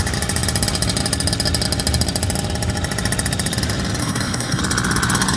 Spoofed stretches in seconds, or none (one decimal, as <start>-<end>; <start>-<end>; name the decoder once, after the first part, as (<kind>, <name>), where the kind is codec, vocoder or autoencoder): 4.0-4.6 (codec, SNAC)